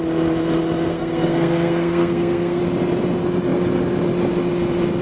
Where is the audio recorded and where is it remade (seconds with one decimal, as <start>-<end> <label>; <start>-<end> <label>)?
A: 0.0-0.9 recorded; 0.9-2.6 remade; 2.6-5.0 recorded